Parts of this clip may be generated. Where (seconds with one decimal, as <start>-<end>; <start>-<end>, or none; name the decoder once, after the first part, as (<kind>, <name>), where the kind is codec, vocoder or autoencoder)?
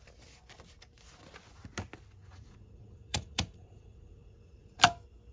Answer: 2.2-4.8 (vocoder, Vocos)